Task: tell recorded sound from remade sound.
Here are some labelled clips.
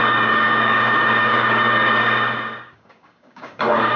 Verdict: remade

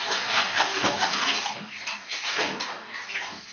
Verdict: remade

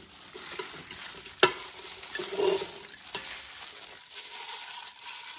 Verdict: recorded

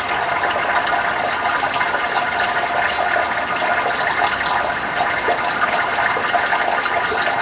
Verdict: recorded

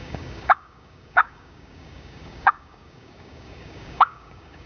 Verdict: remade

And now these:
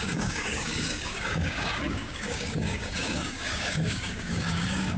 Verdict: remade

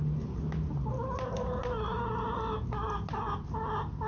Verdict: recorded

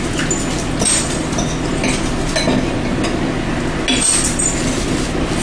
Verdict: recorded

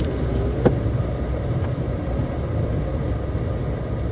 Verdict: recorded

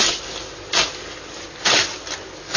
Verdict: recorded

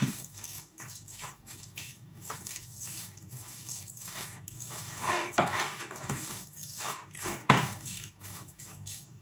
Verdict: remade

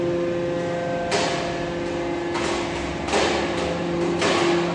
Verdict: recorded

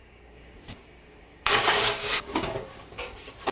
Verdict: remade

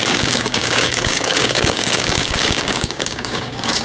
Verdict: remade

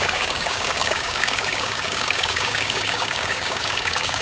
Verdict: remade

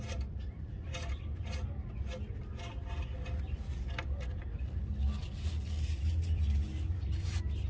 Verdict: recorded